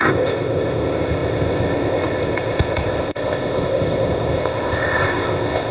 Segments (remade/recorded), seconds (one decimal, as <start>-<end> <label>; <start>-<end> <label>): 0.0-5.7 remade

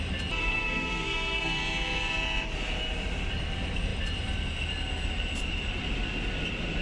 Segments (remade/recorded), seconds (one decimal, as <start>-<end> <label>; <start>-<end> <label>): 0.0-0.4 recorded; 0.4-1.6 remade; 1.6-6.8 recorded

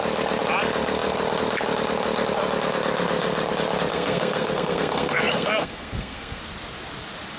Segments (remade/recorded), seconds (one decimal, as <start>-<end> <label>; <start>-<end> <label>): 0.0-3.9 recorded; 3.9-6.4 remade; 6.4-7.4 recorded

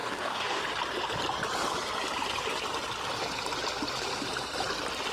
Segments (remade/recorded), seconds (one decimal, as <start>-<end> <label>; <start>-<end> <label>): 0.0-0.6 remade; 0.6-5.1 recorded

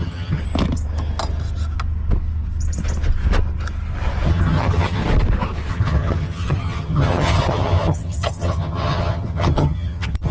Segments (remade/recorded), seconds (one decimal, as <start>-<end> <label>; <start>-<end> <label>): 0.0-0.4 remade; 0.4-4.3 recorded; 4.3-5.0 remade; 5.0-5.7 recorded; 5.7-10.3 remade

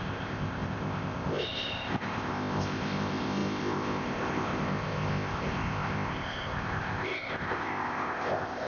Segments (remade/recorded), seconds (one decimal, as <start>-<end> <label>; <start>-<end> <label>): 0.0-8.7 remade